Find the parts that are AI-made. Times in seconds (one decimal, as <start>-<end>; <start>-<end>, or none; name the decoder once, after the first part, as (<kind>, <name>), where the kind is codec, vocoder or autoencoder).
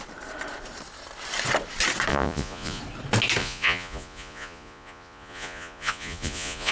2.1-2.8 (vocoder, Vocos); 3.4-6.7